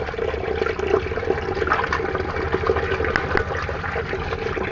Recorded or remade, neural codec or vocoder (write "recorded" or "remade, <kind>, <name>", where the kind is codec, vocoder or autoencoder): recorded